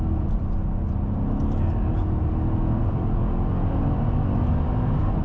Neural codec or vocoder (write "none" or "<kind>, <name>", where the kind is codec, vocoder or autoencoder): none